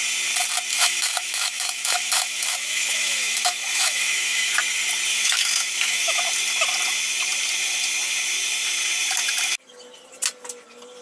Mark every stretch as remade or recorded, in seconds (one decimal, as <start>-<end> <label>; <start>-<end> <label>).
0.0-0.7 recorded; 0.7-4.5 remade; 4.5-5.1 recorded; 5.1-6.2 remade; 6.2-11.0 recorded